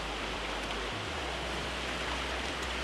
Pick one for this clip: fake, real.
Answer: real